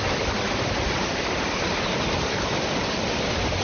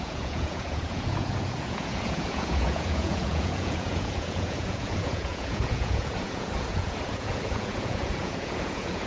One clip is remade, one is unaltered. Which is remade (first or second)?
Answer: second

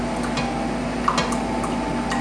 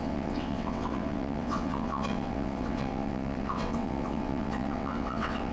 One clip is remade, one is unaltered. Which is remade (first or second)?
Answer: second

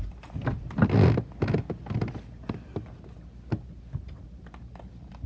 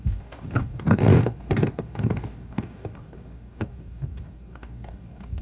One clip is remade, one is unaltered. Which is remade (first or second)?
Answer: second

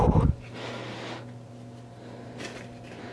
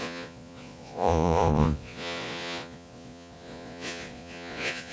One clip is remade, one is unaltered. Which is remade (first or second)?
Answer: second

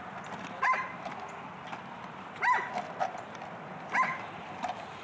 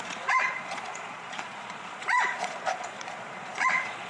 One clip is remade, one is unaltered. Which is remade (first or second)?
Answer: second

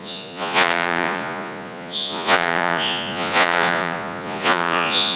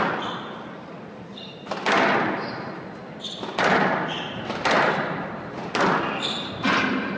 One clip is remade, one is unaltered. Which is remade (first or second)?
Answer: first